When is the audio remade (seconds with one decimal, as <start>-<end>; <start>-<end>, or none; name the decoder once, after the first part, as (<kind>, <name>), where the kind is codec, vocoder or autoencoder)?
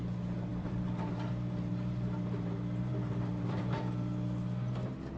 0.5-3.6 (vocoder, BigVGAN v2)